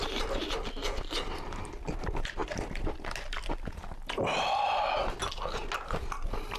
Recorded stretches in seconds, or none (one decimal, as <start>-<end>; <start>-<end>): 0.0-6.6